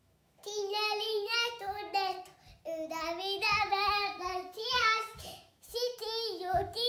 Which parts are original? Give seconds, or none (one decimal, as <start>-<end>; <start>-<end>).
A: 1.9-3.2